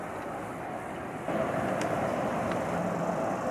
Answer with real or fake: real